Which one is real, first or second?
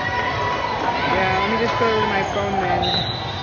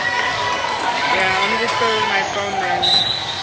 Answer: first